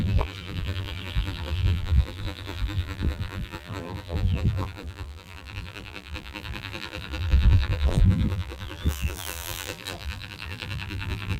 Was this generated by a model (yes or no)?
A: yes